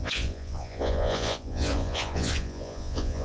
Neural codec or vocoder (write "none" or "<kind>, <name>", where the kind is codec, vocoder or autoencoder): vocoder, Vocos